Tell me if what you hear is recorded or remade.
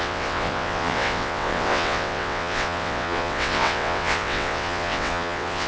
remade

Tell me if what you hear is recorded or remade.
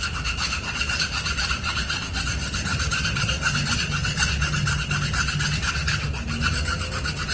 recorded